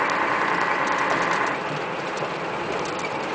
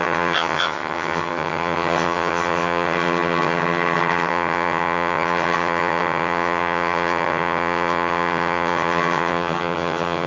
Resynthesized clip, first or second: second